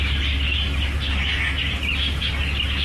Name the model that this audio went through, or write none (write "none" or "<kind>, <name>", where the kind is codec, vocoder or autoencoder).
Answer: none